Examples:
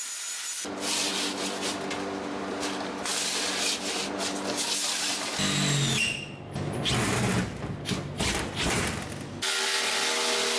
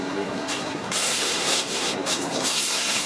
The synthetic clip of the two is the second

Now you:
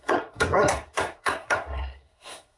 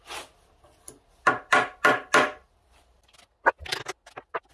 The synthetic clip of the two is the first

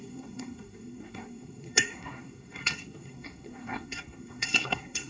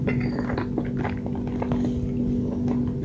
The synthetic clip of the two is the first